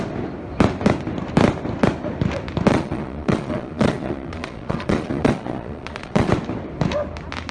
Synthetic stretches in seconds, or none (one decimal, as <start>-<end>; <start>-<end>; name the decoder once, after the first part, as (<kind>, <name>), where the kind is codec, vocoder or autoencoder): 2.7-6.3 (vocoder, Vocos)